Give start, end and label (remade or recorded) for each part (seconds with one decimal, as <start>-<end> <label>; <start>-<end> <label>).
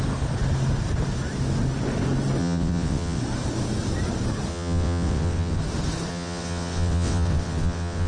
0.0-2.4 recorded; 2.4-3.2 remade; 3.2-4.5 recorded; 4.5-5.6 remade; 5.6-6.1 recorded; 6.1-8.1 remade